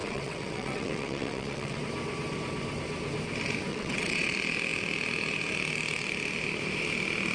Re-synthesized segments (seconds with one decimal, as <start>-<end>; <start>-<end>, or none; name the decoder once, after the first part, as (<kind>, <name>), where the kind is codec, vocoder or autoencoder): 0.0-1.8 (vocoder, WaveNeXt); 3.7-4.3